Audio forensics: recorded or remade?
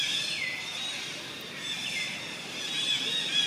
recorded